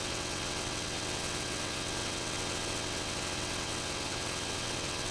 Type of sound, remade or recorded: remade